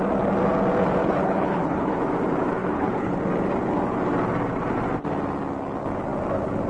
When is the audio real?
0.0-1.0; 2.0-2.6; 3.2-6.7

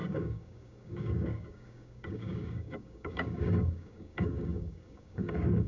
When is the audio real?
none

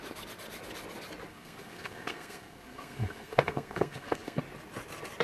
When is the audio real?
0.0-1.3; 4.4-5.2

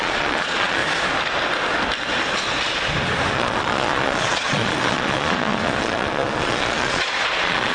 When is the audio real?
0.8-3.3

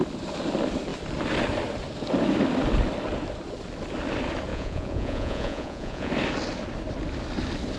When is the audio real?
0.0-4.5; 6.1-7.8

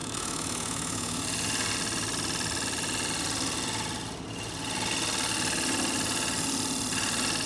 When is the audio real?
1.2-7.5

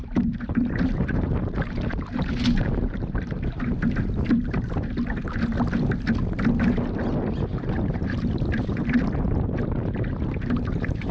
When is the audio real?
3.6-7.5